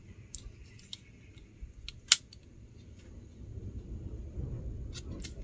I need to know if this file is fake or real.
real